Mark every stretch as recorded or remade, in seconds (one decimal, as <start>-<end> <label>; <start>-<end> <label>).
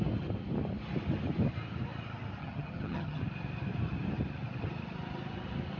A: 0.0-2.4 recorded; 2.4-3.2 remade; 3.2-5.8 recorded